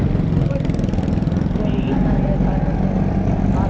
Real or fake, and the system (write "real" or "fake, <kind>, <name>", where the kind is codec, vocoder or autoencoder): real